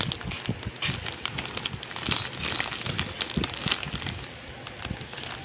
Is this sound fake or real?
real